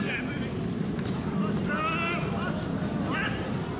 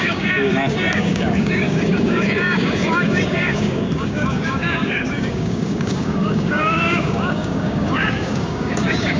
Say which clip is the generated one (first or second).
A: second